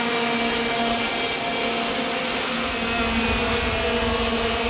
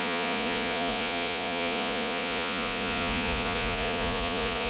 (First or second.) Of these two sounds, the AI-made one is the second